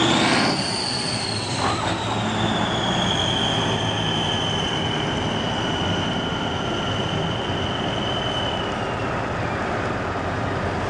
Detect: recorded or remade recorded